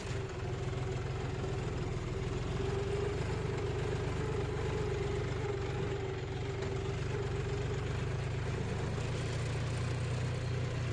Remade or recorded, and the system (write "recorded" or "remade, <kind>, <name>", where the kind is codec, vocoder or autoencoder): recorded